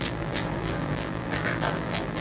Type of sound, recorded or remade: remade